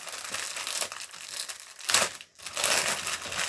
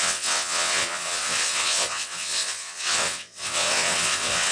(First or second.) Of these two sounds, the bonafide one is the first